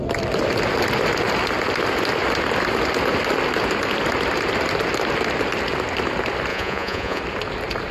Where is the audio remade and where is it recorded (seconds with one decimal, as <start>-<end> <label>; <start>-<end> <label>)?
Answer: 0.0-6.5 recorded; 6.5-7.2 remade; 7.2-7.9 recorded